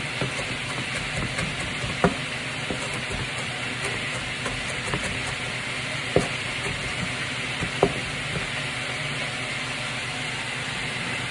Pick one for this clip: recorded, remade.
recorded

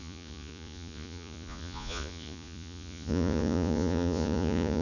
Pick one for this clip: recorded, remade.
remade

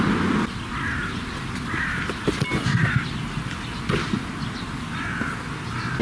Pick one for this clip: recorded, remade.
recorded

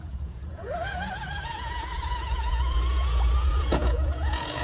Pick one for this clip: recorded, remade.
remade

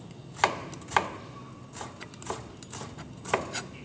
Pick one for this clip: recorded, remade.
recorded